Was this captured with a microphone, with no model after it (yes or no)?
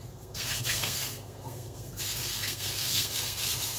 no